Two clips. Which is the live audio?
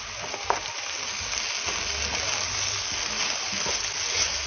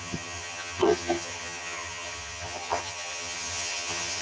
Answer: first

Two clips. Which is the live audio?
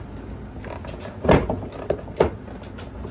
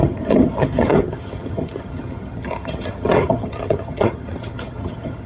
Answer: first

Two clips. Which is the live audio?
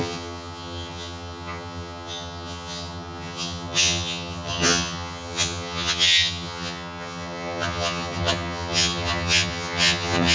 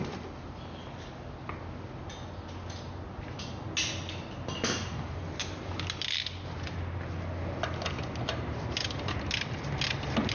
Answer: second